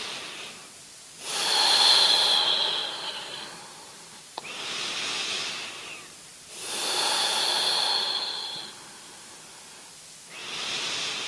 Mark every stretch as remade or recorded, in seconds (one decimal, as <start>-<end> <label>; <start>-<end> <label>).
0.0-2.8 recorded; 2.8-4.4 remade; 4.4-10.4 recorded; 10.4-10.9 remade; 10.9-11.3 recorded